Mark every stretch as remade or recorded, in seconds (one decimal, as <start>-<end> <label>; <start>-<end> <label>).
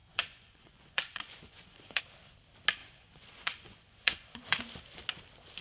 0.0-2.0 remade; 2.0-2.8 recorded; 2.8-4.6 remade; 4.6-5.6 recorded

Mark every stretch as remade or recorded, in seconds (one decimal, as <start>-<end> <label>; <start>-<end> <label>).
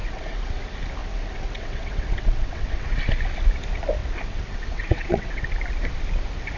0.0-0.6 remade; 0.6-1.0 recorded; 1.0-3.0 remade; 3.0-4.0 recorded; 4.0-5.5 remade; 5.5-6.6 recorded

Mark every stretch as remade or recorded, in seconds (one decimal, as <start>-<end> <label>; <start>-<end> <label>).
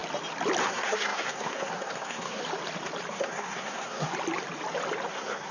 0.0-0.6 recorded; 0.6-2.4 remade; 2.4-3.1 recorded; 3.1-4.1 remade; 4.1-5.1 recorded; 5.1-5.5 remade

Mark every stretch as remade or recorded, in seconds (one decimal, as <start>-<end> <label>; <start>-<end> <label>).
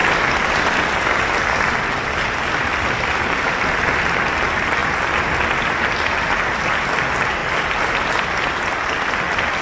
0.0-9.6 recorded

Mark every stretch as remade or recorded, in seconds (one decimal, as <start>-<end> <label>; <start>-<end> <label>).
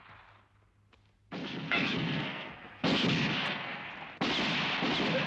0.0-1.4 recorded; 1.4-3.9 remade; 3.9-5.3 recorded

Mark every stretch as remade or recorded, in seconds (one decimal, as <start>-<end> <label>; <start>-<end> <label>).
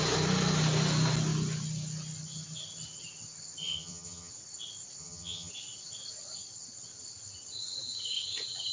0.0-3.6 recorded; 3.6-4.3 remade; 4.3-5.0 recorded; 5.0-5.5 remade; 5.5-8.7 recorded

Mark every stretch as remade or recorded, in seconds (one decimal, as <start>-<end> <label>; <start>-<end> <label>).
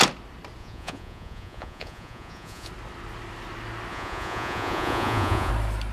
0.0-0.6 recorded; 0.6-2.7 remade; 2.7-3.9 recorded; 3.9-5.5 remade; 5.5-5.9 recorded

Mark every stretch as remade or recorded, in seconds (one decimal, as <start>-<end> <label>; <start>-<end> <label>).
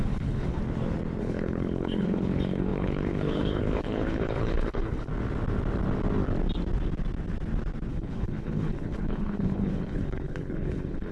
0.0-0.6 remade; 0.6-1.2 recorded; 1.2-5.1 remade; 5.1-7.9 recorded; 7.9-11.1 remade